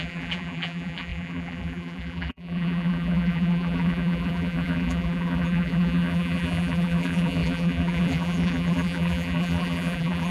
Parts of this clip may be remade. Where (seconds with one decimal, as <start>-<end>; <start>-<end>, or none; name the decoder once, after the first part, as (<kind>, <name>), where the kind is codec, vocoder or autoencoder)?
0.0-10.3 (vocoder, BigVGAN v2)